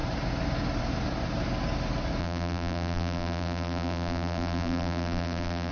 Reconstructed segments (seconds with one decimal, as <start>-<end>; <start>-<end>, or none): 2.2-5.7